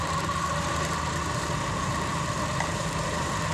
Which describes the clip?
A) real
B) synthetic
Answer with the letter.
A